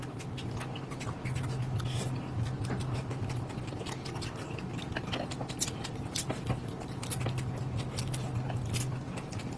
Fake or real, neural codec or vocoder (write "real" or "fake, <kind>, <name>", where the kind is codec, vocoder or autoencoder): real